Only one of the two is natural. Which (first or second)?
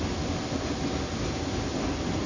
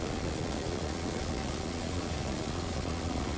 first